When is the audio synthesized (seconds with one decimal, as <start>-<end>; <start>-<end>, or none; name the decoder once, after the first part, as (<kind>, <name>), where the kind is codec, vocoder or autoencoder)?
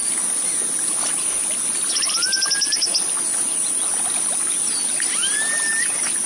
none